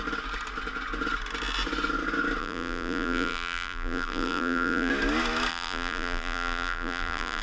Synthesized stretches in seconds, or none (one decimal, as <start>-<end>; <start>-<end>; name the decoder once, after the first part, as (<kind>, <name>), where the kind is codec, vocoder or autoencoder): 2.4-4.9 (vocoder, BigVGAN v2); 5.5-7.4